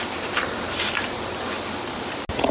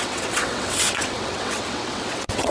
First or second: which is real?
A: first